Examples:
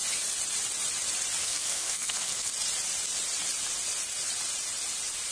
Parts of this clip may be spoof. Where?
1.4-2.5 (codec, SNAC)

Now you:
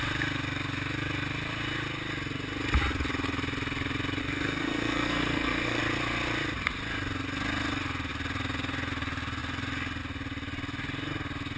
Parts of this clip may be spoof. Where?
4.2-5.8 (codec, SNAC)

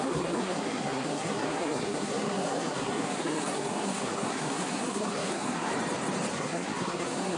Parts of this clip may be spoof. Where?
0.0-5.7 (codec, SNAC); 6.3-7.4

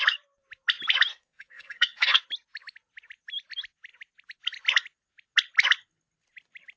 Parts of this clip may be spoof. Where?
1.1-2.2 (codec, SNAC)

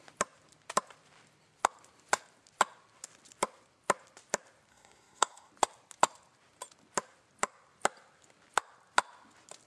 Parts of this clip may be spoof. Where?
4.7-5.5 (codec, SNAC)

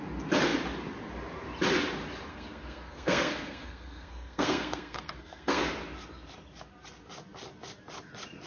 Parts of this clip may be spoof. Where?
2.3-5.6 (codec, SNAC)

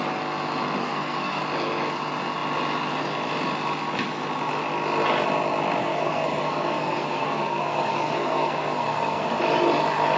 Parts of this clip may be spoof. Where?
0.8-1.4 (codec, SNAC); 5.8-9.3

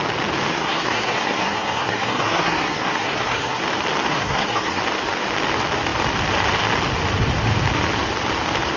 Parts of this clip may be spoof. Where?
0.5-3.6 (codec, SNAC); 4.1-4.8